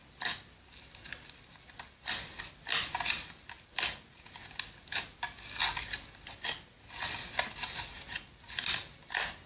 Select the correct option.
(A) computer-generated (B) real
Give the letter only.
B